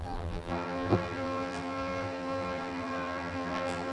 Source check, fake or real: fake